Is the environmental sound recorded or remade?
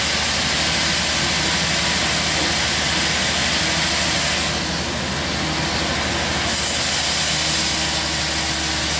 recorded